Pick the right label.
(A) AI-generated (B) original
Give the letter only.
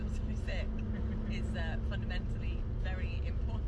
B